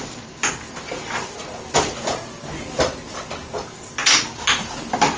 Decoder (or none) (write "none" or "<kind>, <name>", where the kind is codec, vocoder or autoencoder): none